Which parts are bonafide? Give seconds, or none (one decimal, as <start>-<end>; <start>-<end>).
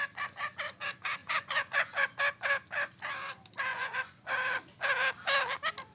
0.0-1.2; 2.2-3.7; 4.3-5.9